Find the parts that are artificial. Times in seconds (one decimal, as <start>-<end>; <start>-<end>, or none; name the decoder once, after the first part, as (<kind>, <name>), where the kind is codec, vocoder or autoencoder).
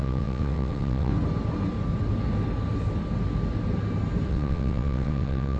0.0-1.1 (vocoder, WaveNeXt); 4.3-5.6